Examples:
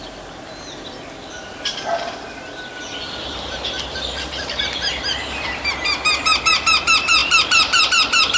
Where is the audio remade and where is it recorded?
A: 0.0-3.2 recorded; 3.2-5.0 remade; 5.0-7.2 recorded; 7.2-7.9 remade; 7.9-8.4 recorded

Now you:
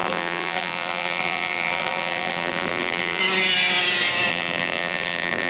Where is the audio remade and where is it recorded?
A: 0.0-3.2 remade; 3.2-4.3 recorded; 4.3-5.5 remade

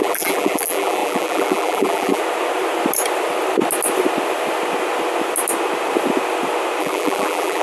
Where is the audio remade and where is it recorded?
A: 0.0-2.2 remade; 2.2-6.8 recorded; 6.8-7.6 remade

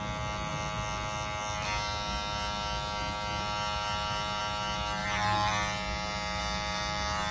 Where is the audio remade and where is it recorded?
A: 0.0-7.3 recorded